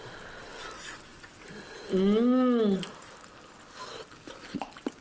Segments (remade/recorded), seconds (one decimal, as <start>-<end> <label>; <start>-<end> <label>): 0.0-5.0 recorded